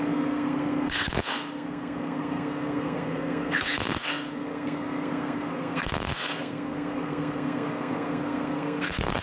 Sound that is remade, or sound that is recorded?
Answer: remade